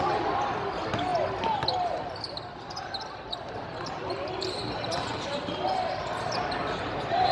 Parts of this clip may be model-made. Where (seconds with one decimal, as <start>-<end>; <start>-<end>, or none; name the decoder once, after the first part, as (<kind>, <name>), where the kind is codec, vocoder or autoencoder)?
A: none

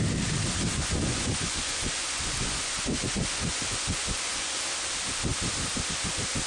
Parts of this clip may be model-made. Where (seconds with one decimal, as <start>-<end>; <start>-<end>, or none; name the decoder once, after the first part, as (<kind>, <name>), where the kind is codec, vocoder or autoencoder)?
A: 0.7-4.6 (vocoder, Vocos)

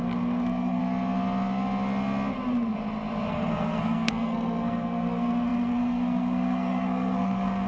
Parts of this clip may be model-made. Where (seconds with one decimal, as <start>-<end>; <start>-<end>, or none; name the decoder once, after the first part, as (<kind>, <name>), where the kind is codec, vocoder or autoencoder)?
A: 0.0-0.8 (codec, SNAC); 3.3-7.7

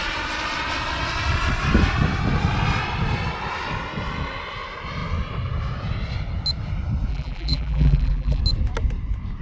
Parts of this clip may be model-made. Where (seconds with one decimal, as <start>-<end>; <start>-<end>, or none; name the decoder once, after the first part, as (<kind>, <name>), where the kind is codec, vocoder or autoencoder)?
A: 7.1-8.4 (vocoder, BigVGAN v2)

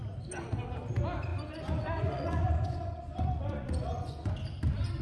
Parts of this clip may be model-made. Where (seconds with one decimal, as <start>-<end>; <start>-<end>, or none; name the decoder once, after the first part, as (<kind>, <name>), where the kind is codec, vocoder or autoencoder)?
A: 1.3-4.3 (vocoder, Vocos)

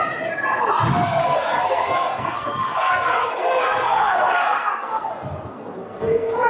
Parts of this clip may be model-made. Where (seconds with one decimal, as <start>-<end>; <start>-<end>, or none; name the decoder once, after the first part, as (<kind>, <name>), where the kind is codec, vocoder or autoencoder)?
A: 1.2-5.1 (codec, SNAC); 5.5-6.5

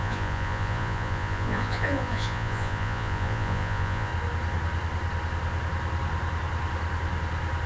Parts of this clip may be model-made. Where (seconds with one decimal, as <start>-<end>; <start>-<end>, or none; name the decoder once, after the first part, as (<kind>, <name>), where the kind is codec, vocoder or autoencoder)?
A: 0.0-4.1 (vocoder, Vocos)

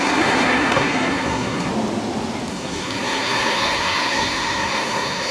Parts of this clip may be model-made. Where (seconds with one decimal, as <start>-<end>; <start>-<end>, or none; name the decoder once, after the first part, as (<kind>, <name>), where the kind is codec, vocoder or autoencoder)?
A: 0.0-1.7 (codec, SNAC); 2.5-5.3